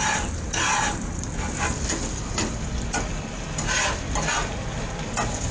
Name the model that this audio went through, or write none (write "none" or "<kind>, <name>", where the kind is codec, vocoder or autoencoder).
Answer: none